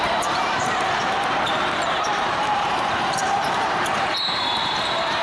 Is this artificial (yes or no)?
yes